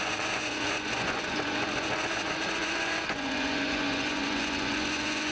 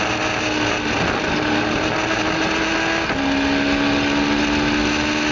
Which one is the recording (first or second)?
second